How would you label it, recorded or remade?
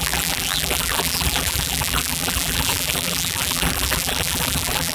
remade